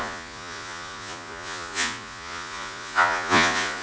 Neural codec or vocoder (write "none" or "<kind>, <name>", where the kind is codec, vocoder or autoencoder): vocoder, Vocos